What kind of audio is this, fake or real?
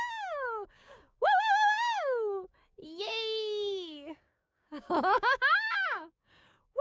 fake